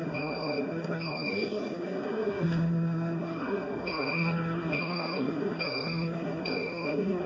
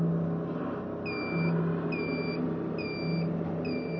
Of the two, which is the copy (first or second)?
first